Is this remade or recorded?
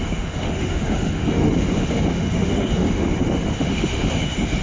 remade